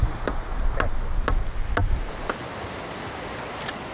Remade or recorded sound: recorded